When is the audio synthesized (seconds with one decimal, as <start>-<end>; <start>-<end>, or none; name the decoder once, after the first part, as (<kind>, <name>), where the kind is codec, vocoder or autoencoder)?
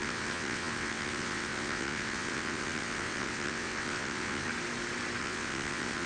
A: 0.0-4.5 (vocoder, WaveNeXt); 5.2-6.1